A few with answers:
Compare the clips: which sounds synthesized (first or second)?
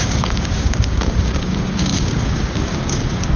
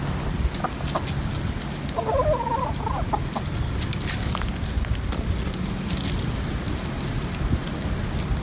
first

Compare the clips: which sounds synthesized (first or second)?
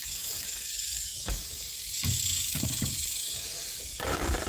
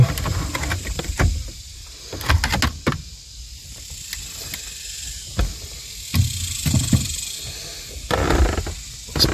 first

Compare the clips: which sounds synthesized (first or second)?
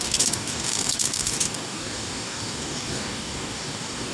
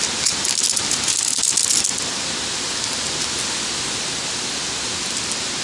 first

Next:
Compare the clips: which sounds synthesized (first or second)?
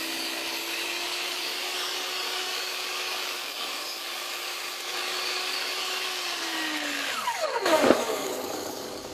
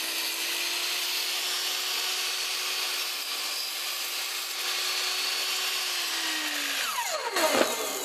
first